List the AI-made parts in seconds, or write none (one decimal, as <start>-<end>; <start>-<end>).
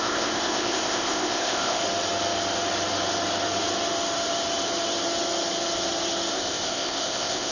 0.0-1.8; 6.3-7.5